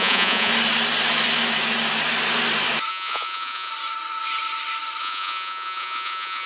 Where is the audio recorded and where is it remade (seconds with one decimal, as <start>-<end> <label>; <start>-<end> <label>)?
0.0-0.5 remade; 0.5-2.9 recorded; 2.9-3.7 remade; 3.7-5.0 recorded; 5.0-6.5 remade